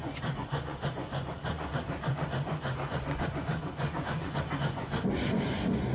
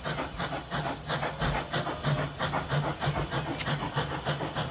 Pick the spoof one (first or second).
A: first